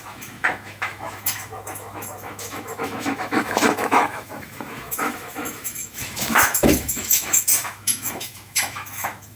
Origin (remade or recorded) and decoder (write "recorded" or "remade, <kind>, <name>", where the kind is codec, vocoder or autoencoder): remade, autoencoder, DAC-VAE